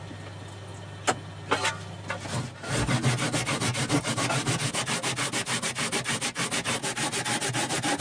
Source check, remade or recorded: recorded